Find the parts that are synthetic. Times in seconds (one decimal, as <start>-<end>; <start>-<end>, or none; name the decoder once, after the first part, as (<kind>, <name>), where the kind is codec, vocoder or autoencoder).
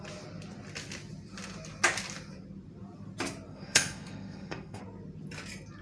3.5-4.8 (codec, SNAC)